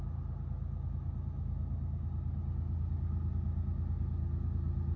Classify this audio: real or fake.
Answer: real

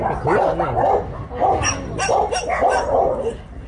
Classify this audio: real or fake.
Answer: real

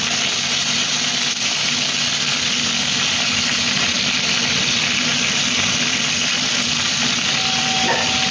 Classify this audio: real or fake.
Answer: real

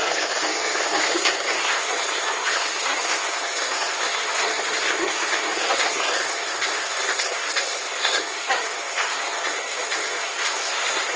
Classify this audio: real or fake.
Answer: fake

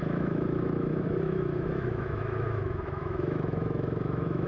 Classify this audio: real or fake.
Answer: fake